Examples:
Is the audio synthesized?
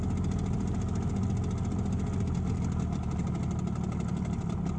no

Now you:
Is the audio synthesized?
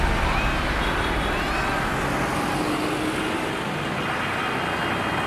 no